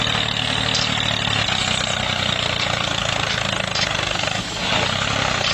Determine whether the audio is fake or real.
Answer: real